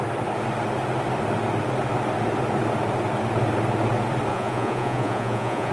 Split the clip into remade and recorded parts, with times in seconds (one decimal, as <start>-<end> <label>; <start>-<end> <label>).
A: 0.0-4.3 recorded; 4.3-5.7 remade